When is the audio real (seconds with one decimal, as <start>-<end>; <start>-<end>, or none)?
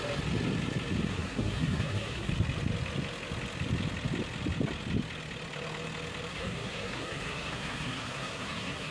0.0-1.1; 2.3-6.3